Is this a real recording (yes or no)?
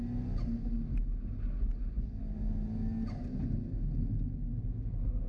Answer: yes